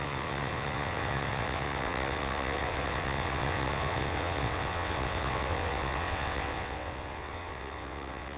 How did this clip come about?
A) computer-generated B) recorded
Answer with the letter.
A